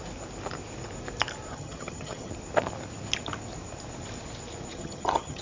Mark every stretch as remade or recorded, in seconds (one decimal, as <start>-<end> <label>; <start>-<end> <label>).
0.0-1.5 recorded; 1.5-2.3 remade; 2.3-4.7 recorded; 4.7-5.4 remade